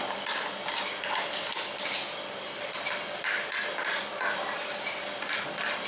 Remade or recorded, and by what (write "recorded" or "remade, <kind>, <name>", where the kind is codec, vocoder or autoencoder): recorded